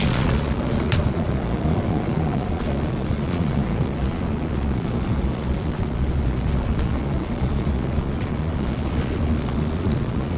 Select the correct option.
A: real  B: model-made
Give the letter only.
B